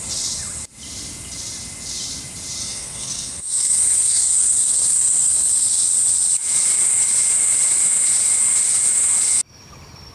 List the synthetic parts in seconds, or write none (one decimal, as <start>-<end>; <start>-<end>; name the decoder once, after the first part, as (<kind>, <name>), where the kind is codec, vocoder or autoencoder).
2.6-5.7 (codec, SNAC)